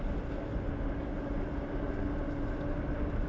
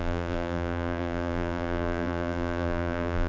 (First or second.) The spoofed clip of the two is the second